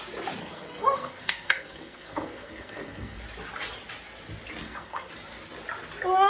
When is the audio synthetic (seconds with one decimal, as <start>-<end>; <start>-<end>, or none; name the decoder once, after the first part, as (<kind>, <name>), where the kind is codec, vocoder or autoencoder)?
0.4-3.2 (codec, SNAC); 4.6-5.1